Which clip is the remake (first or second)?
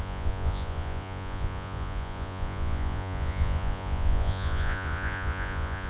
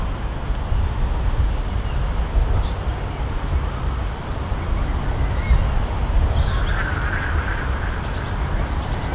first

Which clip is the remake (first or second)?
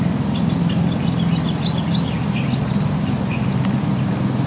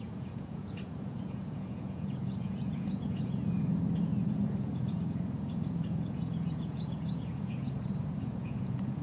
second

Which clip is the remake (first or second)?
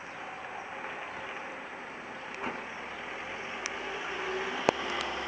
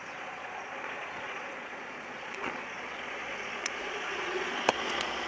second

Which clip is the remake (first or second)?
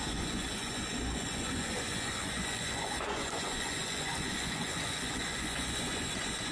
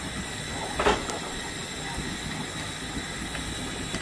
first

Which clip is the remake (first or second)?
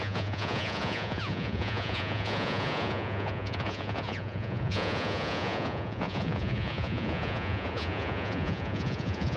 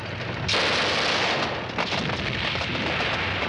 first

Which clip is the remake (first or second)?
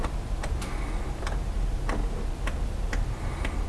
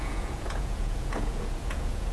second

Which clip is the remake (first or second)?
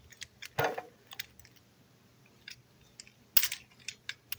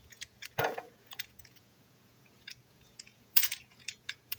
second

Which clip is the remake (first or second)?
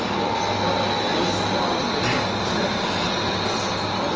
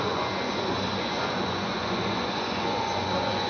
second